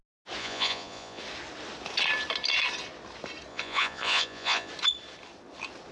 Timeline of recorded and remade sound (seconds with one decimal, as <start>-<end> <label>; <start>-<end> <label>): 0.0-0.4 recorded; 0.4-1.2 remade; 1.2-3.5 recorded; 3.5-4.7 remade; 4.7-5.9 recorded